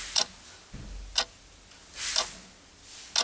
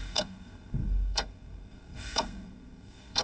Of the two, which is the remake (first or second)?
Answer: second